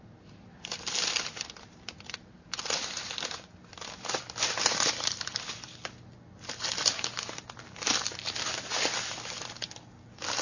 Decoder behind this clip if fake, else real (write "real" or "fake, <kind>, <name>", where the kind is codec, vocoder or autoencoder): real